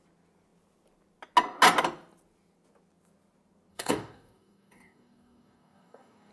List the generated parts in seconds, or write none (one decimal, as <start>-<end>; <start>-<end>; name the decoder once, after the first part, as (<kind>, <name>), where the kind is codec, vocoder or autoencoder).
3.7-6.3 (codec, DAC)

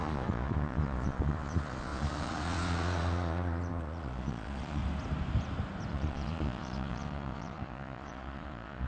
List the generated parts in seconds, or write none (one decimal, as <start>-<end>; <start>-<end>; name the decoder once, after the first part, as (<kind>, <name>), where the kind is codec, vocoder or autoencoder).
0.0-4.8 (vocoder, Vocos); 5.9-8.9